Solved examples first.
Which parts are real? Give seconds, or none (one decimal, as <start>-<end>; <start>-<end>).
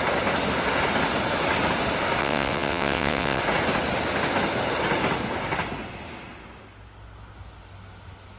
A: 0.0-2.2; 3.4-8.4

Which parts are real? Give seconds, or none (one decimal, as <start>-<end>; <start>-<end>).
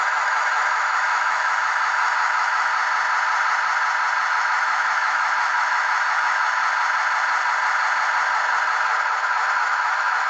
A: 2.7-4.3; 6.6-9.6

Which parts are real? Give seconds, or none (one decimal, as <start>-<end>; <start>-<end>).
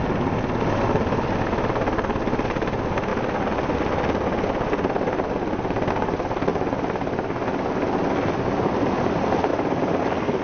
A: 0.0-10.4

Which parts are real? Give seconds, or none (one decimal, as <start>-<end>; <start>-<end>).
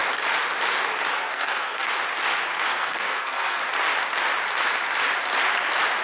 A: 0.0-1.1; 1.9-2.6; 3.6-6.0